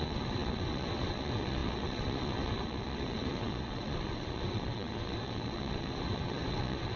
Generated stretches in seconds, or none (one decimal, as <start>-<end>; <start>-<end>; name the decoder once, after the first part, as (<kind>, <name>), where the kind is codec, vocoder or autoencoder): 0.0-7.0 (vocoder, WaveNeXt)